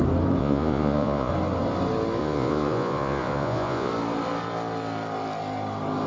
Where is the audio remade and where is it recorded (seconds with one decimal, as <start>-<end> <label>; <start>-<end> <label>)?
0.0-0.4 recorded; 0.4-1.3 remade; 1.3-2.2 recorded; 2.2-3.9 remade; 3.9-6.1 recorded